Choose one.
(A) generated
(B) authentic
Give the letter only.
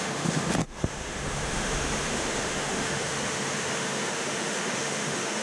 A